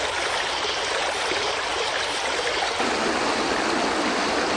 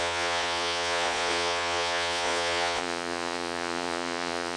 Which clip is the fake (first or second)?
second